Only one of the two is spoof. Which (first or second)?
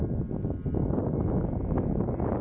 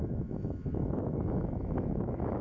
second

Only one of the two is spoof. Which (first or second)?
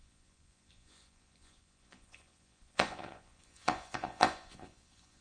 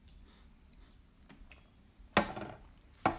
first